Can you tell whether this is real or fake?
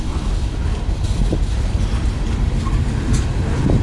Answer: real